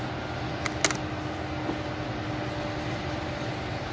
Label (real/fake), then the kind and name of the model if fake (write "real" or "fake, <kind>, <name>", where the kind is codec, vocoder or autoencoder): real